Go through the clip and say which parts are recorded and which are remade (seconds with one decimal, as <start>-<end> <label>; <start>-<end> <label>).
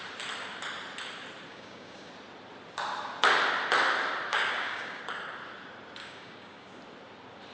0.0-1.5 recorded; 1.5-2.1 remade; 2.1-4.3 recorded; 4.3-5.0 remade; 5.0-6.0 recorded; 6.0-6.8 remade; 6.8-7.5 recorded